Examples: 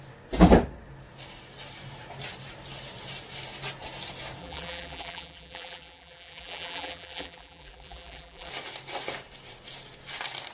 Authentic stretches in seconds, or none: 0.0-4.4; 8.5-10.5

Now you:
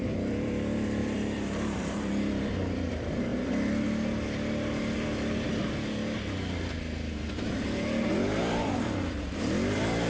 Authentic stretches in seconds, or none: 3.3-8.4